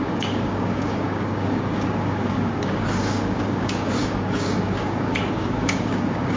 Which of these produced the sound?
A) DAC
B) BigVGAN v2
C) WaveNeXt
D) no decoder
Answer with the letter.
A